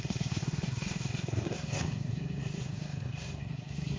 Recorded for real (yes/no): no